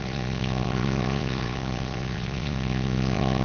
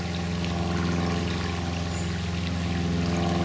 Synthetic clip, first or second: first